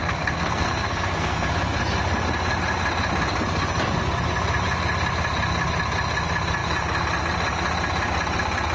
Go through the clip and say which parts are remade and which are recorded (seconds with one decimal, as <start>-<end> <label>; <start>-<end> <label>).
0.0-1.5 remade; 1.5-8.7 recorded